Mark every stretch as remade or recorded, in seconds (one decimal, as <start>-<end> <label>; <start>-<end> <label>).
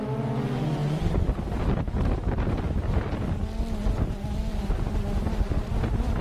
0.0-6.2 recorded